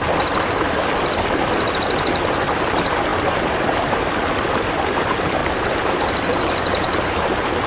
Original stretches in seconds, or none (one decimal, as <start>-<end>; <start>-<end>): 0.0-3.1; 3.9-5.4